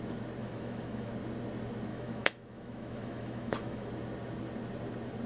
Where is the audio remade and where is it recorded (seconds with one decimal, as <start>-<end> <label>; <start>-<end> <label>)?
0.0-0.4 recorded; 0.4-1.1 remade; 1.1-1.9 recorded; 1.9-3.9 remade; 3.9-5.3 recorded